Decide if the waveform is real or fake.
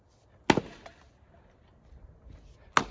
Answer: real